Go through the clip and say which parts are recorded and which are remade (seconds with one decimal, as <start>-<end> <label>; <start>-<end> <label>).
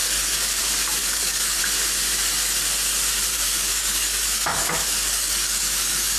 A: 0.0-0.6 remade; 0.6-1.0 recorded; 1.0-1.6 remade; 1.6-3.3 recorded; 3.3-6.2 remade